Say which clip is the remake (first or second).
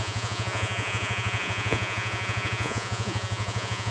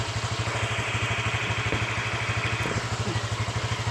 first